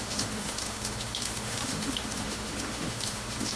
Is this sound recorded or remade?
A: remade